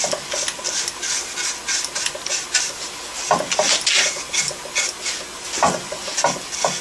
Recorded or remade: recorded